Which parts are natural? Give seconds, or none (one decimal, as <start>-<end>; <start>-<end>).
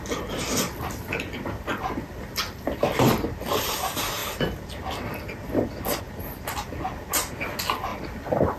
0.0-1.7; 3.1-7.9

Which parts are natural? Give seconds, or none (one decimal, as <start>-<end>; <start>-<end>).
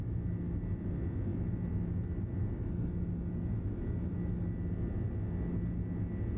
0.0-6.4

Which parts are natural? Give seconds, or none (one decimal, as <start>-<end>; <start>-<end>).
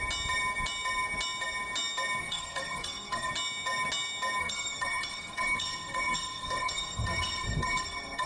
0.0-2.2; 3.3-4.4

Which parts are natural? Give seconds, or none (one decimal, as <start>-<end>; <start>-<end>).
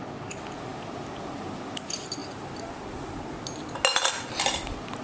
0.0-5.0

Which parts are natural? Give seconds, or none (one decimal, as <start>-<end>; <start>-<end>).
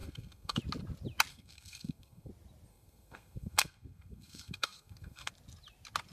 0.6-1.3; 2.3-2.7; 5.3-6.1